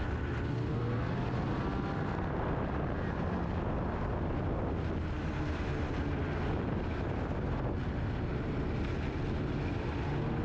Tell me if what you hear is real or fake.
real